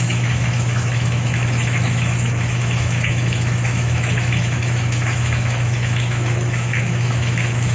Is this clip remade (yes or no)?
yes